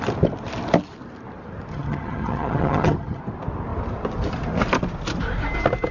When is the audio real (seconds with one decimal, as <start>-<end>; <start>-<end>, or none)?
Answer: 0.0-1.7; 3.2-5.9